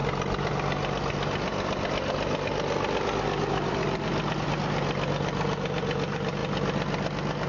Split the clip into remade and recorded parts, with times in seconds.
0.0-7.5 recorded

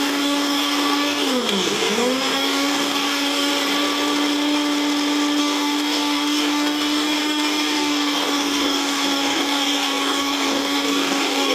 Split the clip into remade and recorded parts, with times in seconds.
0.0-3.5 remade; 3.5-5.4 recorded; 5.4-11.5 remade

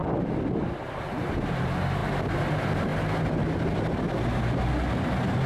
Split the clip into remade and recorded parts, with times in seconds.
0.0-5.5 recorded